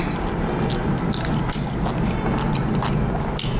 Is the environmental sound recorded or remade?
recorded